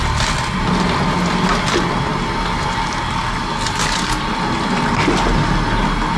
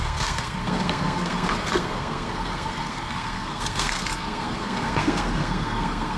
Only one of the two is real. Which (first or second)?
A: first